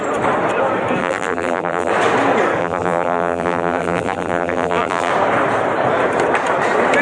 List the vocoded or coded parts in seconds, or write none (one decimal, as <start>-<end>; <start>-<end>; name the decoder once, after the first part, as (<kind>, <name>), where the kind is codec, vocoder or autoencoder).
1.0-1.9 (vocoder, BigVGAN v2); 2.6-5.1